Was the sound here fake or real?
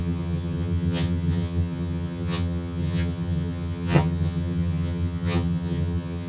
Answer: fake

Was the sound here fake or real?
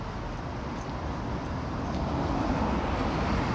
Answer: real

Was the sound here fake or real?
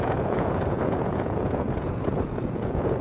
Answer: fake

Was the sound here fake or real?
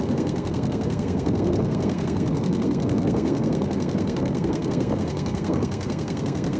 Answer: fake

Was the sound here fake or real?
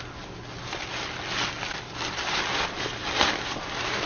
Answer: real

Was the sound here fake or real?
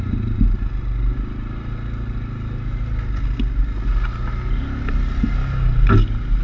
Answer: real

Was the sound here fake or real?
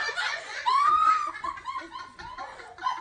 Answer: fake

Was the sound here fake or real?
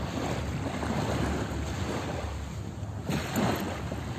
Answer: real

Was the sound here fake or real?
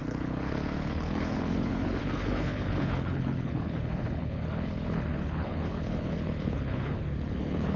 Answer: fake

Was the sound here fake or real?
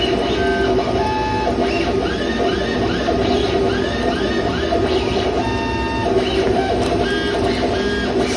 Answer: real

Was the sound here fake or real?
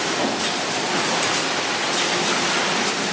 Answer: real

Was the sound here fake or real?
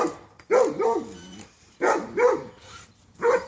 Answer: real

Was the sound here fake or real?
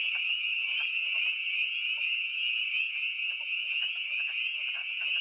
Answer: fake